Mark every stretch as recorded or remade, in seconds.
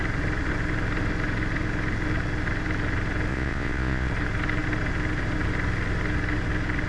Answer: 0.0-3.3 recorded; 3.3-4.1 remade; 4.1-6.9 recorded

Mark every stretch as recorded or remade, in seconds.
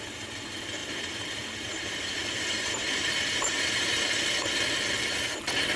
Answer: 0.0-0.8 recorded; 0.8-3.6 remade; 3.6-5.8 recorded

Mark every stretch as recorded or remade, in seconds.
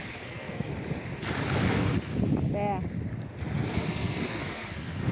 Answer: 0.0-0.7 remade; 0.7-1.7 recorded; 1.7-2.1 remade; 2.1-3.7 recorded; 3.7-5.1 remade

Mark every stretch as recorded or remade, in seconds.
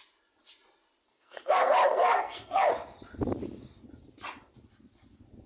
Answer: 0.0-1.1 recorded; 1.1-2.7 remade; 2.7-5.5 recorded